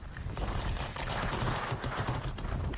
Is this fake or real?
real